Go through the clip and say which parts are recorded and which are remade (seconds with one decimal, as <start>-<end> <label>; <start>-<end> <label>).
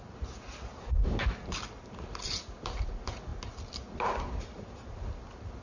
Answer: 0.0-5.6 recorded